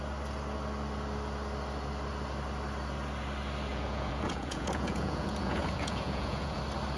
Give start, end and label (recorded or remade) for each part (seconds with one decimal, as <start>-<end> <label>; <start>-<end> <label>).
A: 0.0-3.7 recorded; 3.7-6.6 remade; 6.6-7.0 recorded